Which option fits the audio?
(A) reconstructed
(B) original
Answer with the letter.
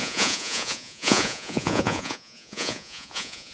A